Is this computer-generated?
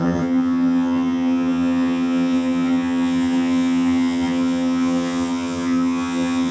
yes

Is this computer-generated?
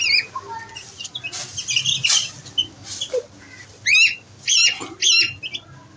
no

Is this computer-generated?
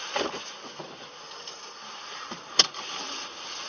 no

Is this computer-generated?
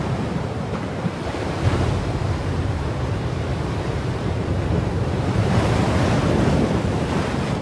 yes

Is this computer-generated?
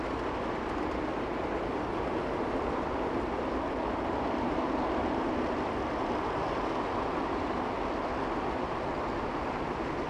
yes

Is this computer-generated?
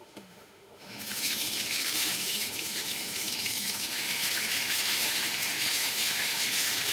yes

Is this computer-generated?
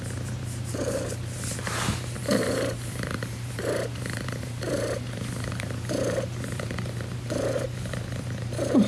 yes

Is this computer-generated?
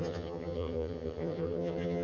yes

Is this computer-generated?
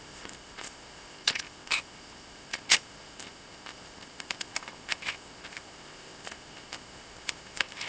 yes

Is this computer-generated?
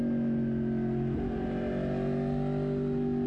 no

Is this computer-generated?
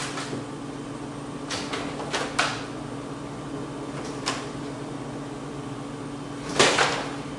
no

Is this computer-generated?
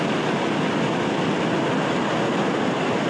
no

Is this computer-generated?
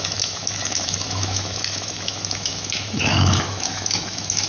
yes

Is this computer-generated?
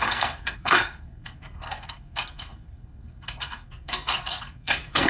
yes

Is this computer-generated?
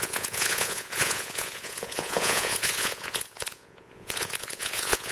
yes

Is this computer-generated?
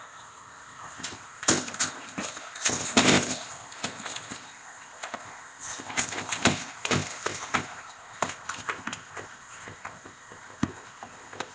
yes